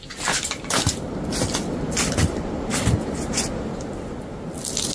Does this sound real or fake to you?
real